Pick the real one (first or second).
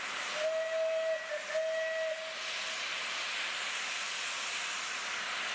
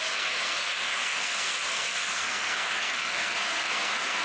first